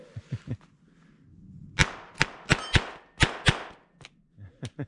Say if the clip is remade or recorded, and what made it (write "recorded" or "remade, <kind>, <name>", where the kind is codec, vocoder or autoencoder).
recorded